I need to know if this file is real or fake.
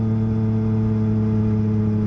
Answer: real